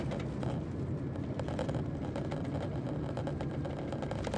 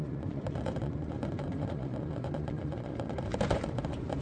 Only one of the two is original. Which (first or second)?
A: first